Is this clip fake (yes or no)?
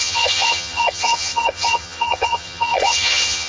yes